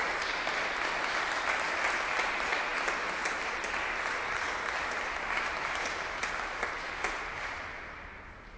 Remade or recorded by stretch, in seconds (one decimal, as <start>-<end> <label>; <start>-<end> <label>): 0.0-8.6 recorded